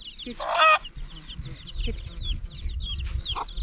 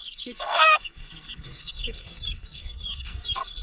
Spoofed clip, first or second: second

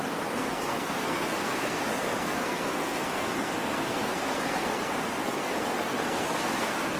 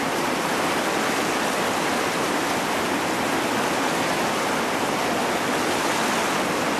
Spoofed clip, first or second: first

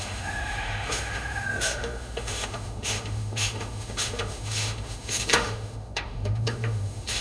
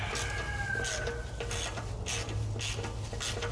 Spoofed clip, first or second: first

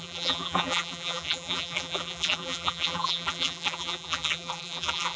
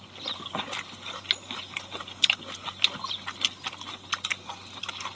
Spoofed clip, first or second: first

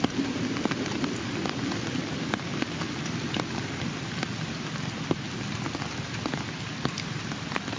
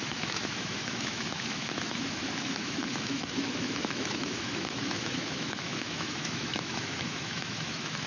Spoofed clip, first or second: second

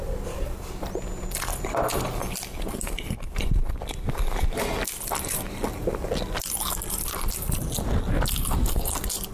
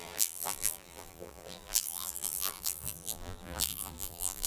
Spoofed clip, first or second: second